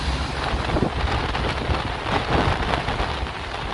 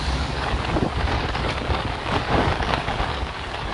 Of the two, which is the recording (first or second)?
first